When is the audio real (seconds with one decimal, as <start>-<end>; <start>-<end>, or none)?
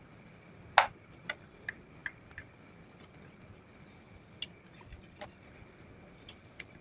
0.0-6.8